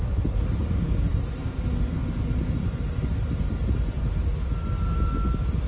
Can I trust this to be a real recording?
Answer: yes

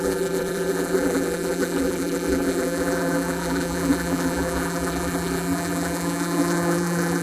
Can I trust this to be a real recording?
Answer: no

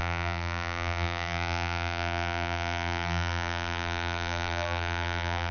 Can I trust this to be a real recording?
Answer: no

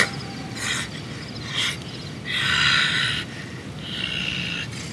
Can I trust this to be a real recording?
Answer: yes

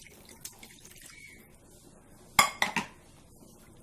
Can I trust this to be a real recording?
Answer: yes